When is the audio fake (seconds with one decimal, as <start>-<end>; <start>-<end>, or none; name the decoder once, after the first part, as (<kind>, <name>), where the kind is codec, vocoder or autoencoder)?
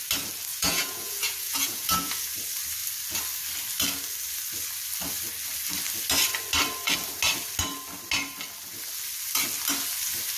0.5-2.3 (vocoder, Vocos)